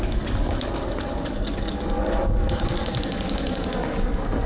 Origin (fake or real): fake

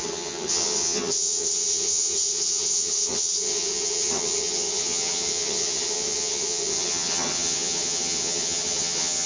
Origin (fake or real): fake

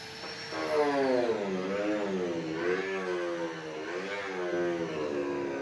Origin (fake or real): real